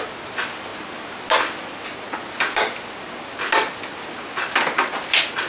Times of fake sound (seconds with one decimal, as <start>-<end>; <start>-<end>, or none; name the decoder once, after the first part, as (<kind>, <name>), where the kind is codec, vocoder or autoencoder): none